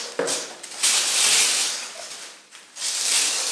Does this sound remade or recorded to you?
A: remade